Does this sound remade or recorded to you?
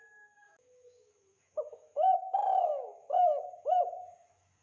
remade